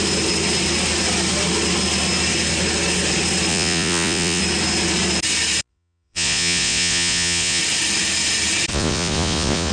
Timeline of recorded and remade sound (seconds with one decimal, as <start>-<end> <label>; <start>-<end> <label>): 0.0-3.5 recorded; 3.5-4.4 remade; 4.4-5.7 recorded; 5.7-7.6 remade; 7.6-8.7 recorded; 8.7-9.7 remade

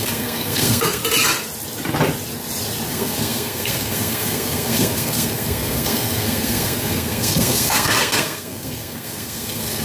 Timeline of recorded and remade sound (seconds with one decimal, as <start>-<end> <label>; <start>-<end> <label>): 0.0-1.0 remade; 1.0-2.9 recorded; 2.9-9.8 remade